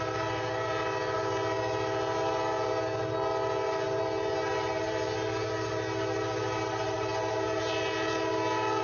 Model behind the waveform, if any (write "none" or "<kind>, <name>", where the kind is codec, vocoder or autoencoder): none